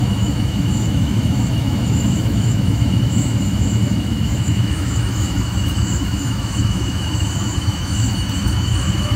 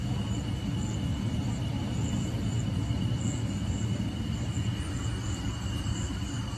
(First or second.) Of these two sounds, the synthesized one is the first